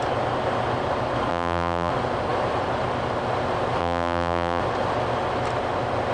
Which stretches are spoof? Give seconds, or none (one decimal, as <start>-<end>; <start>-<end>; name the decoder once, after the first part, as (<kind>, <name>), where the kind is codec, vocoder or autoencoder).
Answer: 1.3-1.9 (vocoder, BigVGAN v2); 3.8-4.6